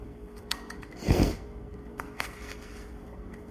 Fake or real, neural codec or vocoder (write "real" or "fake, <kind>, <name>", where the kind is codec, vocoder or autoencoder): fake, codec, SNAC